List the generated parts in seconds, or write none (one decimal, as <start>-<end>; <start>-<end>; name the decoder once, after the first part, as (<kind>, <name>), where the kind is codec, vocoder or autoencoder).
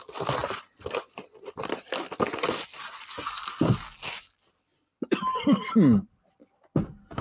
0.4-3.5 (vocoder, BigVGAN v2); 4.7-6.3